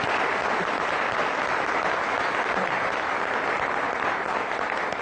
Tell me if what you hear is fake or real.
real